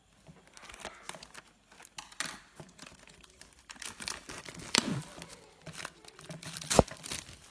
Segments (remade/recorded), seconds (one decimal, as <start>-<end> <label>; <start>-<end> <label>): 0.0-7.5 recorded